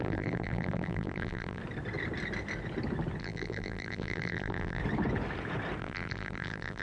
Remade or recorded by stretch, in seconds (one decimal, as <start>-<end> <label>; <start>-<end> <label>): 0.0-1.6 remade; 1.6-3.2 recorded; 3.2-4.8 remade; 4.8-5.8 recorded; 5.8-6.8 remade